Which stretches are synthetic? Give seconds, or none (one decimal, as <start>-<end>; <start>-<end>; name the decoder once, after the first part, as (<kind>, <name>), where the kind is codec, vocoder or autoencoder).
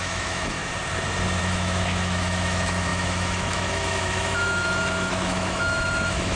0.0-0.6 (autoencoder, DAC-VAE); 1.4-6.4